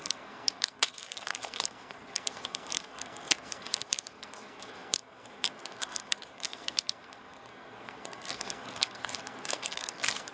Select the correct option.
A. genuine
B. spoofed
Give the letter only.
B